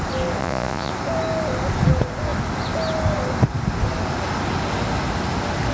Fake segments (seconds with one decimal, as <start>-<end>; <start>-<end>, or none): 0.4-0.9